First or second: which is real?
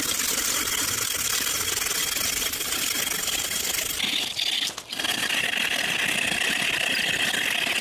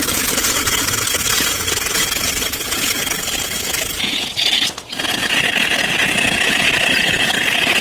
first